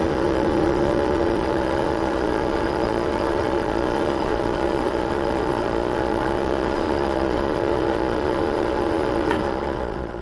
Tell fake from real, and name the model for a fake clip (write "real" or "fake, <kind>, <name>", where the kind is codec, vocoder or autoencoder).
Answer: fake, vocoder, Vocos